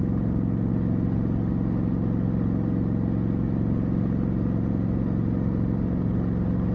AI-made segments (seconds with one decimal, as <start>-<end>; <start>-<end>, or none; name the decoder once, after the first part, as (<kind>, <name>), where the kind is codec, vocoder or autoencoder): none